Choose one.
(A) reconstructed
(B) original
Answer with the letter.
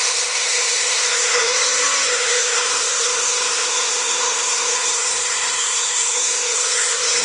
A